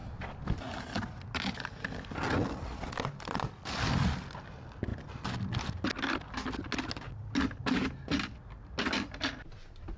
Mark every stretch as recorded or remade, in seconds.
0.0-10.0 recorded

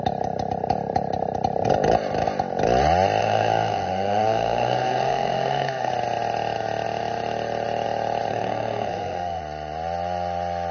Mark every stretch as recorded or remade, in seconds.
0.0-3.2 recorded; 3.2-5.9 remade; 5.9-8.3 recorded; 8.3-9.4 remade; 9.4-10.7 recorded

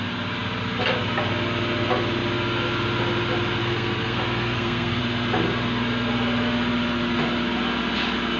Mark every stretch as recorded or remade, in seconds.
0.0-3.6 recorded; 3.6-5.0 remade; 5.0-8.4 recorded

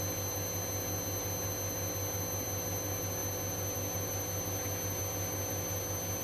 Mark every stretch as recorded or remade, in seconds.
0.0-6.2 recorded